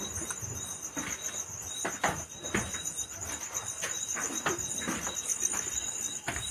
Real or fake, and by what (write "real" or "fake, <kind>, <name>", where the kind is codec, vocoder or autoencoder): real